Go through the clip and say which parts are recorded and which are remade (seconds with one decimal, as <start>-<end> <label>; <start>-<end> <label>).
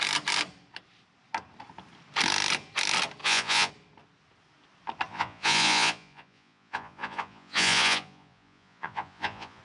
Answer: 0.0-3.2 recorded; 3.2-3.7 remade; 3.7-5.1 recorded; 5.1-9.6 remade